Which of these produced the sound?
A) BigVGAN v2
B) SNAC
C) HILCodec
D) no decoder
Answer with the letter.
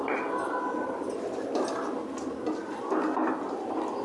D